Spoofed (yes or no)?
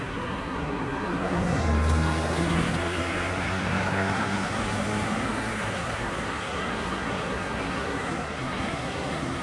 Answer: yes